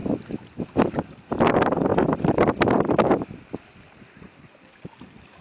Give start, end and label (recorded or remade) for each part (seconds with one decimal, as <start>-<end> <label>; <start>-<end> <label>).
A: 0.0-5.4 recorded